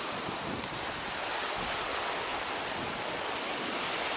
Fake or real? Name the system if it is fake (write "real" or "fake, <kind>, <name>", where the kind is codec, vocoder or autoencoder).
real